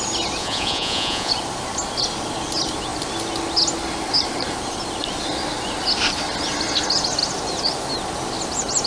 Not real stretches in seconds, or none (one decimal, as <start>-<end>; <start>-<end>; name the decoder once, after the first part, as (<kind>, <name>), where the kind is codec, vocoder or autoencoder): 0.4-1.3 (vocoder, Vocos)